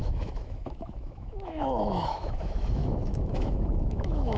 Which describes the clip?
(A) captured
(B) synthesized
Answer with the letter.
B